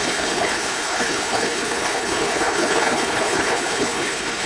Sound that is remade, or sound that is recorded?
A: remade